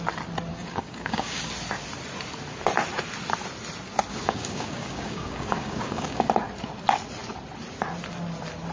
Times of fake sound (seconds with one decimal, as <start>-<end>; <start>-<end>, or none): 0.5-1.4; 4.1-6.3